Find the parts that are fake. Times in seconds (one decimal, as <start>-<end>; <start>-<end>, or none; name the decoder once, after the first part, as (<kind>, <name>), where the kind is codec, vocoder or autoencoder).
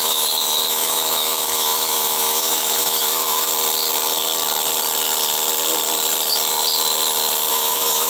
0.0-3.5 (autoencoder, DAC-VAE); 7.5-8.1